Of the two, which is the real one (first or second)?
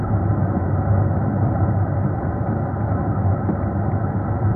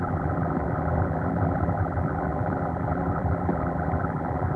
first